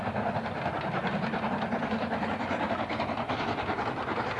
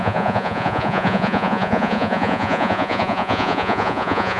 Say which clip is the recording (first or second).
first